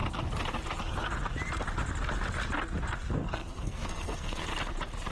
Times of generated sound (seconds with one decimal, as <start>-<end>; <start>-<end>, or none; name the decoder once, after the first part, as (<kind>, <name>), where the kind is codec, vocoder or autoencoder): 3.1-4.5 (codec, SNAC)